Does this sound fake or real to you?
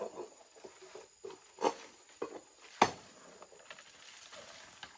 real